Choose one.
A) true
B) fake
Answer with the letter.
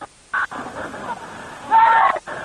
A